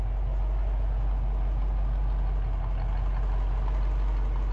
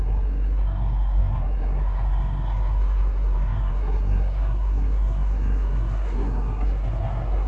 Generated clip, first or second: second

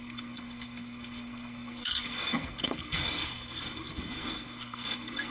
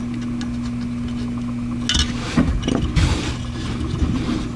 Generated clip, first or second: first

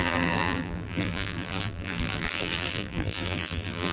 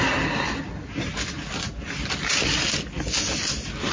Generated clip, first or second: first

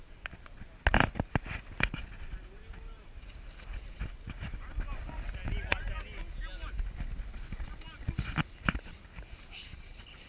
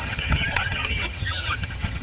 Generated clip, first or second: second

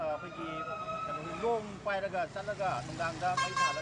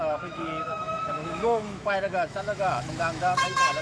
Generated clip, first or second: second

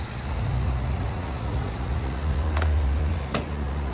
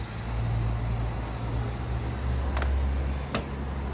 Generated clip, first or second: first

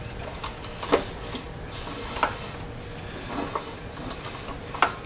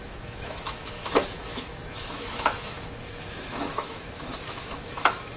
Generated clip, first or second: second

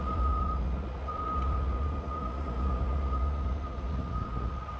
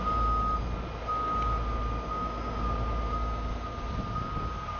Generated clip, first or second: first